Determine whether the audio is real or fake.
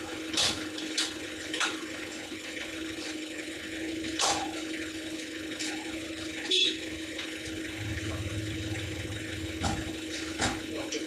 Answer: fake